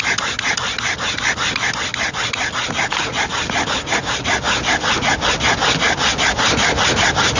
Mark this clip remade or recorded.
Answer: recorded